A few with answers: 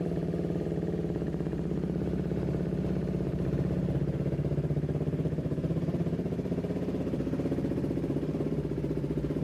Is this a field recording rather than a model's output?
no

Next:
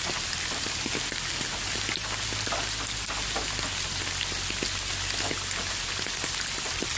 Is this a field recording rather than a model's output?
yes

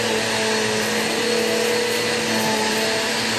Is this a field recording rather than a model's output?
yes